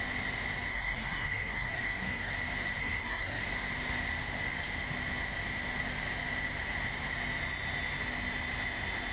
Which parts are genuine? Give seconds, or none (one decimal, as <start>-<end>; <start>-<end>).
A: 0.0-0.7; 2.3-2.8; 3.4-9.1